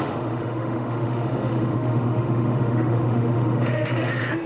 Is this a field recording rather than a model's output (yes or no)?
no